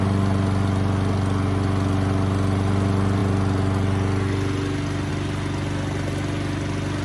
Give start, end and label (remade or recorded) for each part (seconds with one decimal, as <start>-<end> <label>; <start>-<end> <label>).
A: 0.0-7.0 recorded